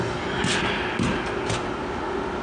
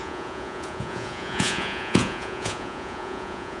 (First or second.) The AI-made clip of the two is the second